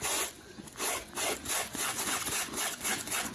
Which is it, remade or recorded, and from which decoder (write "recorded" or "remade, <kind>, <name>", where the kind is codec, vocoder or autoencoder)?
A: remade, vocoder, Vocos